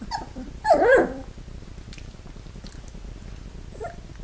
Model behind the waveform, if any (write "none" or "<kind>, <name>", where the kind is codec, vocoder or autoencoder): none